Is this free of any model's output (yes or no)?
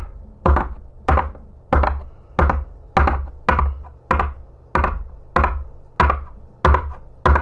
yes